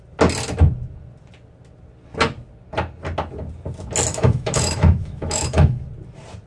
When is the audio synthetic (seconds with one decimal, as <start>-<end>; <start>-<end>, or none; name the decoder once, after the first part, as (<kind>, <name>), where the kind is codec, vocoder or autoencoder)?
4.1-5.8 (autoencoder, DAC-VAE)